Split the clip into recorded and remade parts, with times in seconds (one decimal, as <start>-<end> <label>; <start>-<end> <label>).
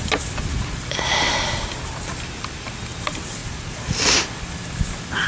0.0-5.3 recorded